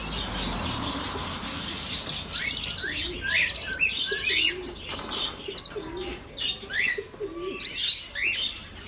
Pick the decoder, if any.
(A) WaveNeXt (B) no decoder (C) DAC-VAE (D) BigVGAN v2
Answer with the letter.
B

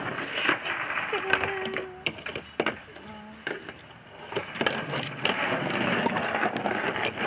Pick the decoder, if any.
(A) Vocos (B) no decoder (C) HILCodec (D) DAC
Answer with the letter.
B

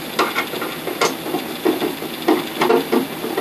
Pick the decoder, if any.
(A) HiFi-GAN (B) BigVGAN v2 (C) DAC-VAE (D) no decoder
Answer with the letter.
D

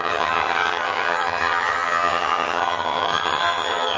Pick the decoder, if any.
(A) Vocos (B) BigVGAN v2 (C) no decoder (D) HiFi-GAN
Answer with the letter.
D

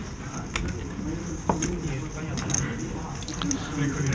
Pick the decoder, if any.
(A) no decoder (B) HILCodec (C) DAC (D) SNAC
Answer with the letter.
A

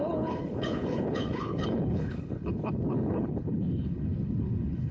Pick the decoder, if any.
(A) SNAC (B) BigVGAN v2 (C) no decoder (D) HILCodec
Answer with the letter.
D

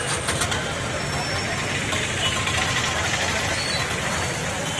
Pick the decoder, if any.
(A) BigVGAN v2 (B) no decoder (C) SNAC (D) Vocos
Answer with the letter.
B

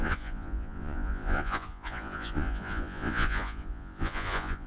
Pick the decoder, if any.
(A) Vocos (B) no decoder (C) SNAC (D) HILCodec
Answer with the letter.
A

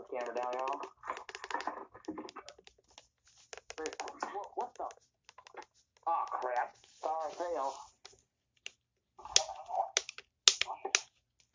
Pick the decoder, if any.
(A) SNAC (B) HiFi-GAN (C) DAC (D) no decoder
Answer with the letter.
D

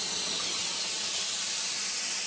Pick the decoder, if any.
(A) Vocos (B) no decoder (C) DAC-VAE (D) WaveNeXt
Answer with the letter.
B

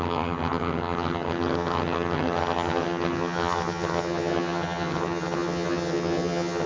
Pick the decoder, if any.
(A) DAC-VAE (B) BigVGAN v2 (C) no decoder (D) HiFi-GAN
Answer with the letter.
D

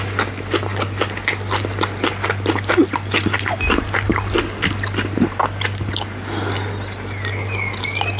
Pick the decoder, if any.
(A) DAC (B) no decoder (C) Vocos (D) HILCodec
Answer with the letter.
B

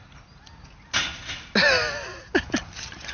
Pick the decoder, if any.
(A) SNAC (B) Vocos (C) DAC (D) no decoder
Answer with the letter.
D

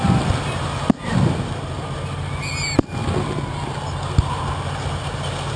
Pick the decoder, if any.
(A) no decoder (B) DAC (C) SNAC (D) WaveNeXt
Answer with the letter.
A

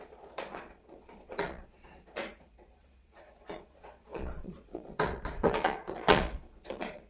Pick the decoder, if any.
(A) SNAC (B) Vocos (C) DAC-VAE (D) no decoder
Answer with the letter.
B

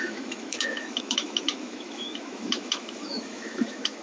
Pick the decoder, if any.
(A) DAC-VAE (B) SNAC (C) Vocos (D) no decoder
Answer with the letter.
A